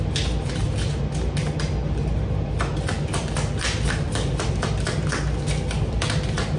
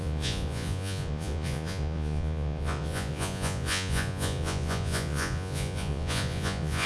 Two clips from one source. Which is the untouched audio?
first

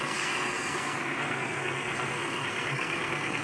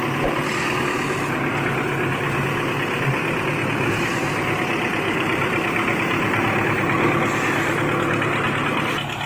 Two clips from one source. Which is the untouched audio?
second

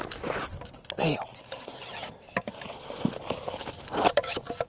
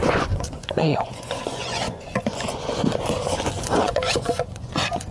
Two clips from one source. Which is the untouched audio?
first